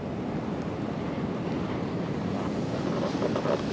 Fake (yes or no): no